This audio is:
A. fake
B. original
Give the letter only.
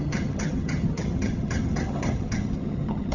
A